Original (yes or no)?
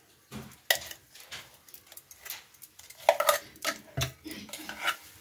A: yes